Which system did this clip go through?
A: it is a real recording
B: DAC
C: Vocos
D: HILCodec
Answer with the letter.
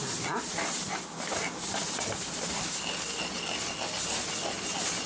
A